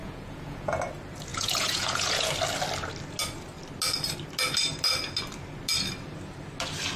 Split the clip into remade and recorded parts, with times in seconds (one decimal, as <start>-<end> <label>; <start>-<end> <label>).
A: 0.0-0.7 remade; 0.7-1.3 recorded; 1.3-2.3 remade; 2.3-7.0 recorded